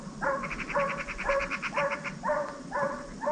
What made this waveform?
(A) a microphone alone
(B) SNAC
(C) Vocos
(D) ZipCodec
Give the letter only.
A